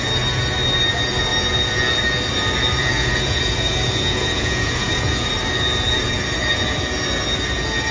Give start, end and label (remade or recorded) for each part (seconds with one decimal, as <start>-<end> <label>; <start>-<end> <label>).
0.0-2.8 recorded; 2.8-5.3 remade; 5.3-7.9 recorded